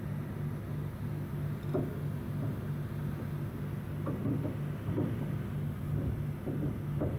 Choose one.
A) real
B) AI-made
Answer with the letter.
A